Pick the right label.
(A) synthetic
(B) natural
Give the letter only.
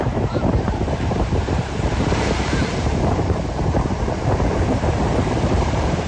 A